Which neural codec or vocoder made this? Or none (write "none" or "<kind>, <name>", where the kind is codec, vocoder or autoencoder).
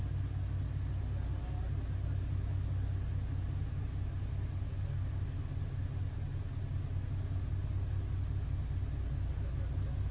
none